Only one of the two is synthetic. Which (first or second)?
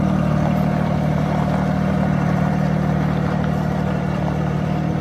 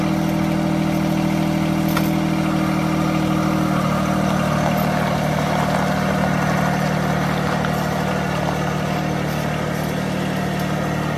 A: first